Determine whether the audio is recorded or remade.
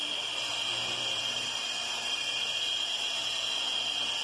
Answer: remade